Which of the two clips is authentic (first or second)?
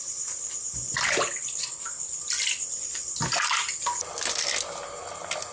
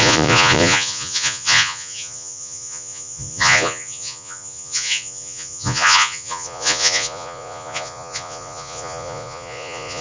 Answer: first